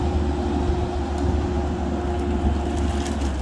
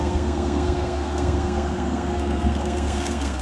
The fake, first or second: second